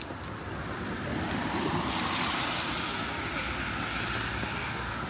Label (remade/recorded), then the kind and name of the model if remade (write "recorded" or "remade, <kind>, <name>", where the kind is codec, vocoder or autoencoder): recorded